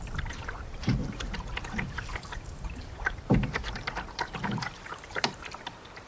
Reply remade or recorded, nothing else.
remade